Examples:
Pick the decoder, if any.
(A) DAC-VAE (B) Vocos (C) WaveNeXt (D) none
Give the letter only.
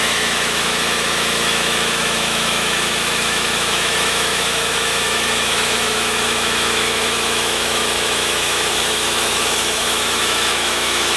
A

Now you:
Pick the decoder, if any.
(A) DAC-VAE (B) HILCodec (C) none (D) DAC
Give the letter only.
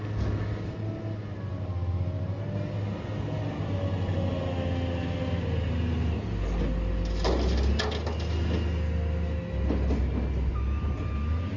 C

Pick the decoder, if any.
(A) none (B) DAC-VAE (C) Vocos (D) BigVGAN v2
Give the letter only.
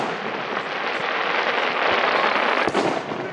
A